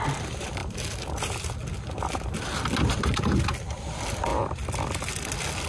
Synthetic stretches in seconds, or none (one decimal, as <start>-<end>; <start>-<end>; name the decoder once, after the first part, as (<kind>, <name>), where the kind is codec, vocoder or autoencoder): none